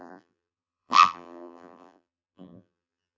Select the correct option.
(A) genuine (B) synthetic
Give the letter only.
B